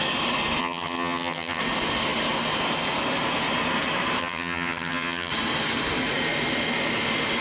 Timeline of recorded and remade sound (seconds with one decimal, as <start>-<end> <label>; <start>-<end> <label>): 0.0-0.6 recorded; 0.6-1.6 remade; 1.6-4.2 recorded; 4.2-5.3 remade; 5.3-7.4 recorded